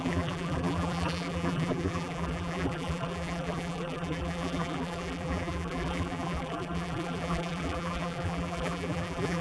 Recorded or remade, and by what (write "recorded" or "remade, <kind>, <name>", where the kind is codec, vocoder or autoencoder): remade, vocoder, BigVGAN v2